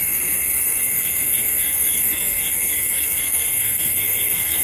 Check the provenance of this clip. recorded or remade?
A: remade